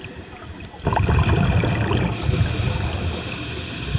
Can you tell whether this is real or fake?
real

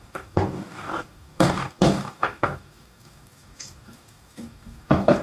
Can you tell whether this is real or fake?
fake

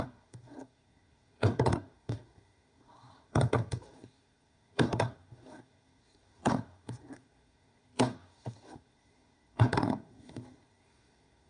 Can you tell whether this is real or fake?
fake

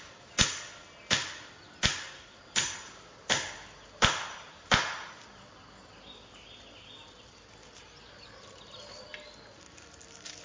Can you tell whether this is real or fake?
real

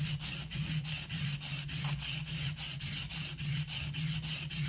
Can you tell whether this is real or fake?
real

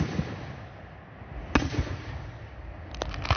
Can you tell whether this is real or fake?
real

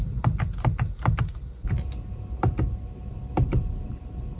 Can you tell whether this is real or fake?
real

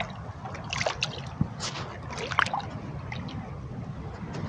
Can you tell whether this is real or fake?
real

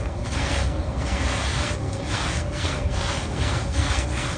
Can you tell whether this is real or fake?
fake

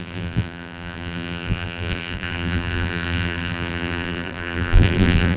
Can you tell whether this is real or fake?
fake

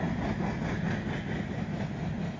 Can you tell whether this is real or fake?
real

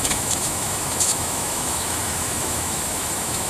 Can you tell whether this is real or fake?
fake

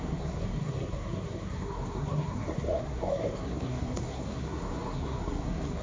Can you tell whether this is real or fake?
fake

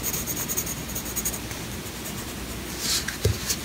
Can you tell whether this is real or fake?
real